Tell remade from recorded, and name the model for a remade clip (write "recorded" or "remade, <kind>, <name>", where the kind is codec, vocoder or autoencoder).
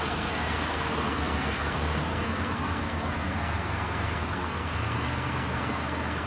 remade, codec, SNAC